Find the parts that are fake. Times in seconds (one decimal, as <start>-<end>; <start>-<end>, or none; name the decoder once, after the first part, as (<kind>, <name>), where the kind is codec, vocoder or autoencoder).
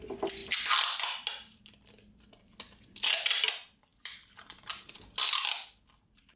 none